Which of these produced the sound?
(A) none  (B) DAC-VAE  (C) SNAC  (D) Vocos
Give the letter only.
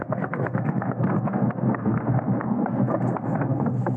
C